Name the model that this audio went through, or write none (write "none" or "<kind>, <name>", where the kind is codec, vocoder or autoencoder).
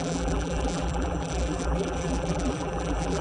vocoder, BigVGAN v2